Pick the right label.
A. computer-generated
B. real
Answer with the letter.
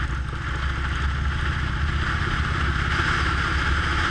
B